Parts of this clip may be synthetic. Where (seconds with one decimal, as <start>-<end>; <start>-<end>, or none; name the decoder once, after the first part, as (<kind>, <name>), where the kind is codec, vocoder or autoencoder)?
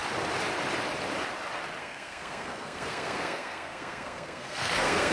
1.8-5.1 (codec, SNAC)